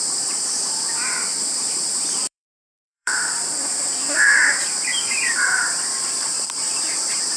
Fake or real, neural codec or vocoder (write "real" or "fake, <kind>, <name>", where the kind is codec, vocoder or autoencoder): fake, vocoder, BigVGAN v2